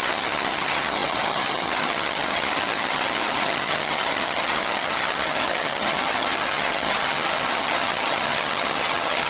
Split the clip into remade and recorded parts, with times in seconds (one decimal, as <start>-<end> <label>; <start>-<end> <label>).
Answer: 0.0-9.3 remade